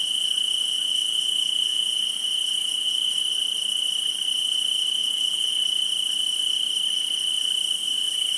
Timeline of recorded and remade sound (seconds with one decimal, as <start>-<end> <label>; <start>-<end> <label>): 0.0-1.0 recorded; 1.0-2.0 remade; 2.0-5.0 recorded; 5.0-5.5 remade; 5.5-8.4 recorded

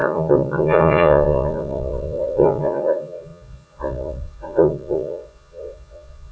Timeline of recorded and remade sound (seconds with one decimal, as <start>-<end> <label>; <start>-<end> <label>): 0.0-6.3 remade

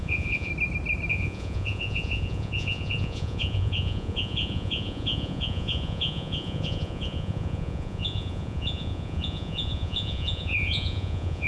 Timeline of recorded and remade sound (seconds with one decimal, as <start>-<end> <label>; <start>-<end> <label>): 0.0-0.5 remade; 0.5-1.1 recorded; 1.1-11.5 remade

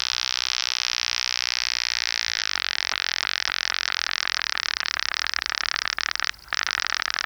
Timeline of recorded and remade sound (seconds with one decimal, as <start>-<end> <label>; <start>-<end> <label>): 0.0-7.3 recorded

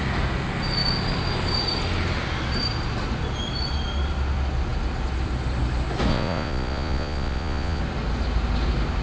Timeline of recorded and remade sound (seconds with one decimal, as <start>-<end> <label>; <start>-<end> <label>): 0.0-6.1 recorded; 6.1-7.8 remade; 7.8-9.0 recorded

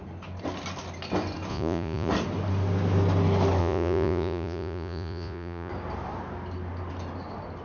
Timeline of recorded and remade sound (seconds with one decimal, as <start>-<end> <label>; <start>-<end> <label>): 0.0-1.5 recorded; 1.5-2.1 remade; 2.1-3.6 recorded; 3.6-5.7 remade; 5.7-7.6 recorded

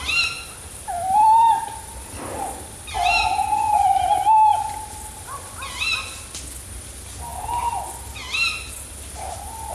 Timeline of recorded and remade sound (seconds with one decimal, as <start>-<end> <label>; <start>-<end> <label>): 0.0-9.7 recorded

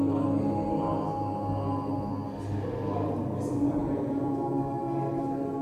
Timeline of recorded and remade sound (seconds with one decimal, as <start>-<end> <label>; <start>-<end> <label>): 0.0-3.8 recorded; 3.8-4.4 remade; 4.4-5.6 recorded